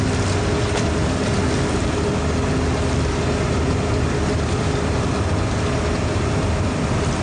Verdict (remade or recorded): recorded